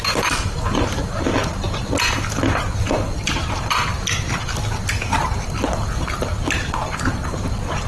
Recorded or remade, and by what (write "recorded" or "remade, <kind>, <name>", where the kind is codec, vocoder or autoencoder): recorded